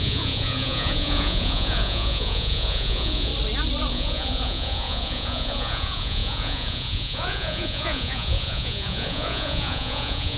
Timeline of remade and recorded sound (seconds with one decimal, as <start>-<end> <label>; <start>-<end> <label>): 0.0-3.3 remade; 3.3-3.9 recorded; 3.9-10.4 remade